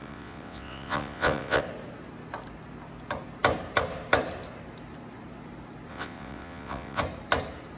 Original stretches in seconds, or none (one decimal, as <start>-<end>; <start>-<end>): 1.6-5.9; 7.0-7.8